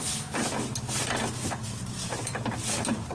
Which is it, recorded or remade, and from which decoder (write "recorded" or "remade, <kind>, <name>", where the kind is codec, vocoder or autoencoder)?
recorded